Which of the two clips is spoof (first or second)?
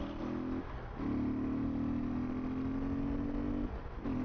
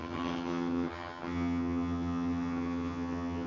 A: second